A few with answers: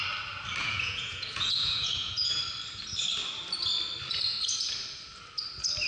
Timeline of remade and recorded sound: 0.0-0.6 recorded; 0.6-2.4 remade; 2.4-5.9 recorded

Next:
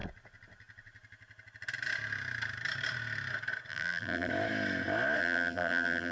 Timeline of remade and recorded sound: 0.0-3.7 recorded; 3.7-4.3 remade; 4.3-5.2 recorded; 5.2-6.1 remade

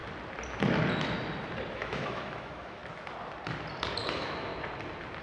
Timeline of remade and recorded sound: 0.0-1.7 recorded; 1.7-2.8 remade; 2.8-4.1 recorded; 4.1-4.5 remade; 4.5-5.2 recorded